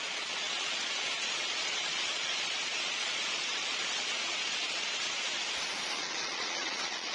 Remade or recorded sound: remade